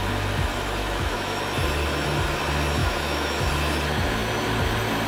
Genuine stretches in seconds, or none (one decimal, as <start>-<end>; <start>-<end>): 0.0-0.8; 1.4-2.8; 3.5-5.1